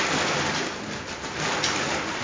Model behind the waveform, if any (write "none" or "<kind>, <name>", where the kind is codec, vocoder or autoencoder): none